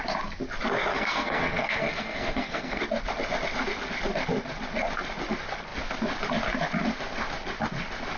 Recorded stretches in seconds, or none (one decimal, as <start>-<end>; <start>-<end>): 0.0-0.9; 2.8-8.2